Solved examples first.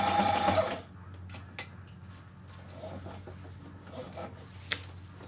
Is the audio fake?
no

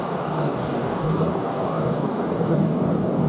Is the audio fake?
yes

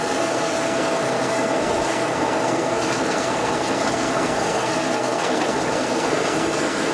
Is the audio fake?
yes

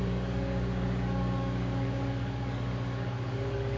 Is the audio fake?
yes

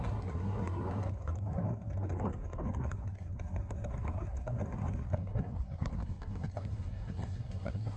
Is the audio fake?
yes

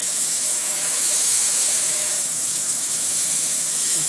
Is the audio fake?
yes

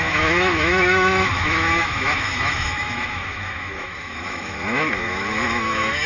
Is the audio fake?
yes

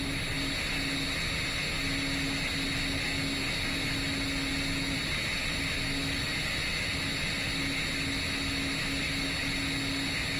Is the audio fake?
no